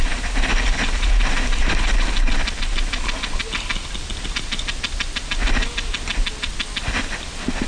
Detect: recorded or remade recorded